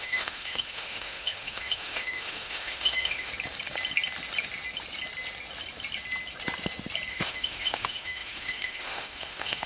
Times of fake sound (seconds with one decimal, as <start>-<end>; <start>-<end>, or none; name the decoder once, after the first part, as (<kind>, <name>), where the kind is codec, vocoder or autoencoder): 0.0-3.3 (autoencoder, DAC-VAE); 7.1-9.7